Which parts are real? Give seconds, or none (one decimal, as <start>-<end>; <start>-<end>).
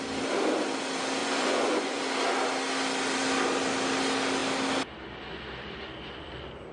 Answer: 0.0-1.2; 2.0-6.7